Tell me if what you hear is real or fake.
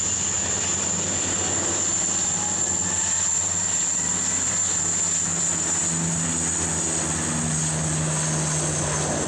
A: real